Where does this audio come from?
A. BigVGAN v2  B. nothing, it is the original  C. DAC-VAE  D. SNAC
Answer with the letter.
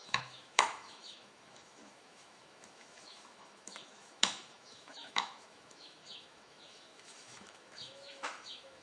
C